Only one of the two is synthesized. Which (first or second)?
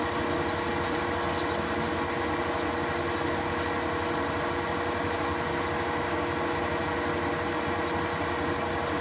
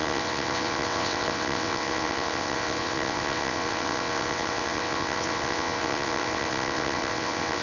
second